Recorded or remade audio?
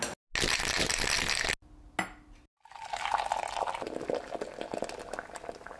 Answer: recorded